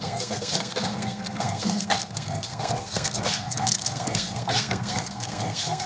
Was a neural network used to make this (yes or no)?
yes